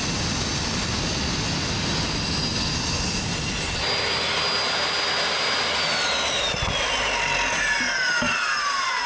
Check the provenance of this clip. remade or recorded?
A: recorded